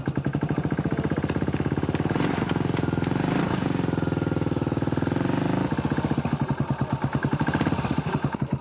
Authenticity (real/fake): real